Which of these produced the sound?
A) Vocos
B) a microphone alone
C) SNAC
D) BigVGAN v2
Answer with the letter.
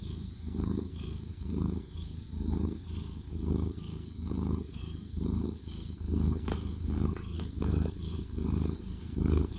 C